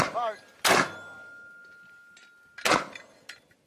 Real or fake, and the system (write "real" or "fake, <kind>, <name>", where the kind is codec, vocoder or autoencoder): real